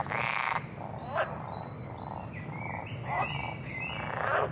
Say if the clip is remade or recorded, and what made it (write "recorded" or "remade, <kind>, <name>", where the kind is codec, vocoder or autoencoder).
recorded